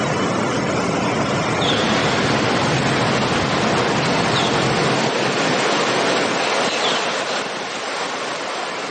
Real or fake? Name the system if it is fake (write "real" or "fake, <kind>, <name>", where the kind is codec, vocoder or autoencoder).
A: real